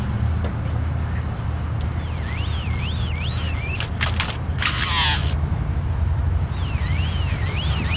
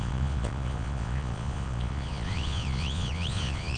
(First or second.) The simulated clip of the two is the second